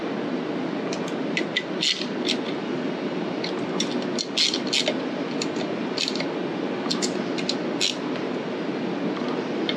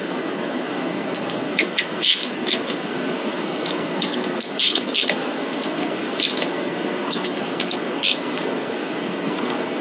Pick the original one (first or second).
first